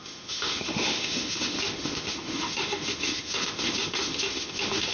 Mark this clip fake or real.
fake